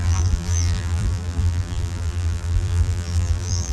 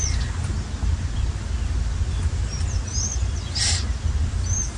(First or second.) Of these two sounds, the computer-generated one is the first